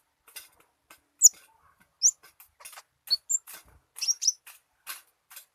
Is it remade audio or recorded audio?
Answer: recorded